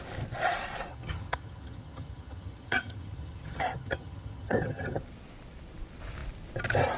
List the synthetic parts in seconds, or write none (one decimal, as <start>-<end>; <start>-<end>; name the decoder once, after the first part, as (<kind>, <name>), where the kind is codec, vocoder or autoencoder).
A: 0.9-5.0 (vocoder, HiFi-GAN)